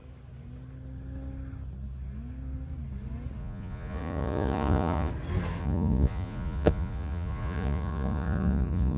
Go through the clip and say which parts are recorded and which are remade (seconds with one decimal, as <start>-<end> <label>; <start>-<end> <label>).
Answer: 0.0-3.4 recorded; 3.4-5.1 remade; 5.1-5.6 recorded; 5.6-9.0 remade